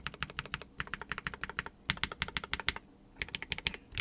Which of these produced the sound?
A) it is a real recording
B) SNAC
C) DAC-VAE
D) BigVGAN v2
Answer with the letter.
A